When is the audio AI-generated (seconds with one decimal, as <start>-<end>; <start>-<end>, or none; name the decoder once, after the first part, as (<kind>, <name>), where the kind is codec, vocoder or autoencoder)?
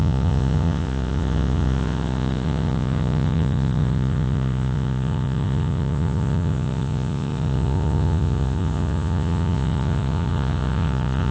0.0-11.3 (vocoder, Vocos)